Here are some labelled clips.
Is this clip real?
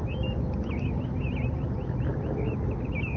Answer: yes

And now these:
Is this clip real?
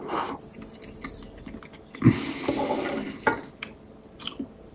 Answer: yes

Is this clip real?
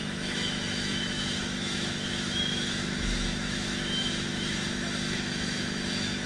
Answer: no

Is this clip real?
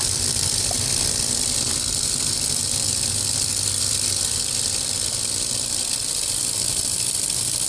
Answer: no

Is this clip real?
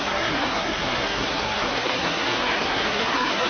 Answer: no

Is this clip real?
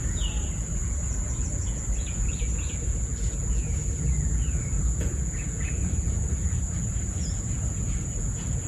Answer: no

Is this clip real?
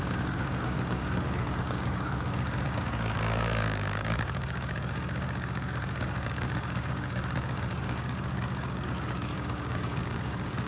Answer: no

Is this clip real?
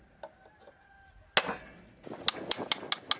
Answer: yes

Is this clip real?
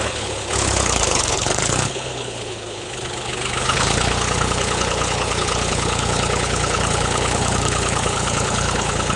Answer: no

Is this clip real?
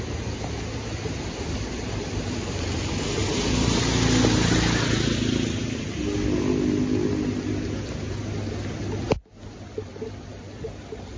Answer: yes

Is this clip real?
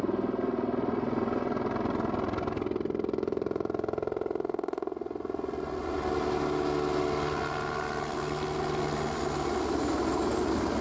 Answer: yes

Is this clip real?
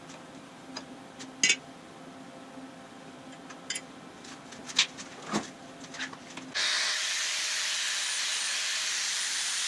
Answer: yes